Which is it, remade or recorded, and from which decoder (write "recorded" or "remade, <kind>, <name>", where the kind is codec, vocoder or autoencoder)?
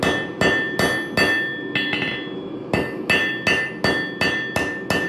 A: recorded